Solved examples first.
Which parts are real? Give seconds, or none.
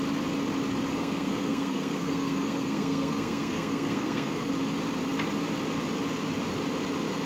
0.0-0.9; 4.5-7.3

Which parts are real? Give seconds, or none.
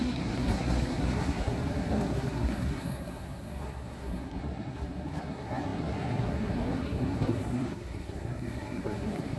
none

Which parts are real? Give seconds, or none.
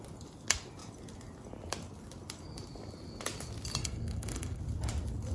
0.0-3.8; 4.6-5.3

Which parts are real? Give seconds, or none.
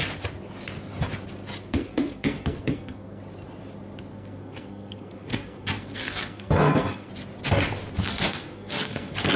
0.0-1.6; 3.2-4.1; 7.1-8.0